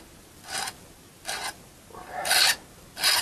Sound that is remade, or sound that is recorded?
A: recorded